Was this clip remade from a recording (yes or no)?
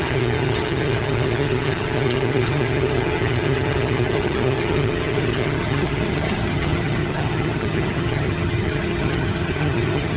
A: yes